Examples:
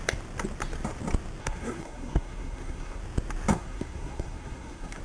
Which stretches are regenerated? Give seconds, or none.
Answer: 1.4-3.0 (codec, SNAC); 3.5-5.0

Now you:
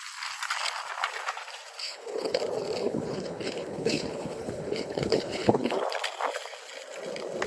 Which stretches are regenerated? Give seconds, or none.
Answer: 1.8-2.4 (codec, HILCodec); 2.8-5.8

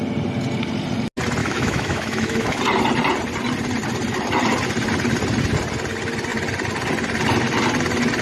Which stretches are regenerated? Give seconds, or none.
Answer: 1.4-2.6 (autoencoder, DAC-VAE)

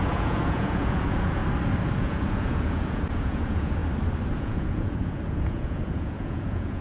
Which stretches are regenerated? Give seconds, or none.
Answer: 0.0-1.4 (vocoder, Vocos); 2.0-3.8; 4.3-6.8